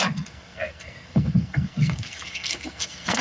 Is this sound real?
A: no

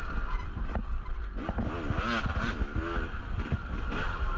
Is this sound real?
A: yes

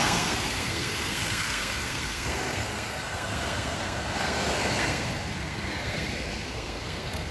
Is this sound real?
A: no